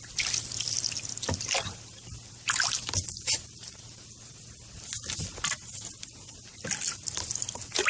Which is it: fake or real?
real